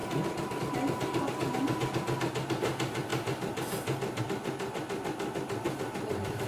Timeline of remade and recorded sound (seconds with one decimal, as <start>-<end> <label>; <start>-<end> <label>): 0.0-6.5 recorded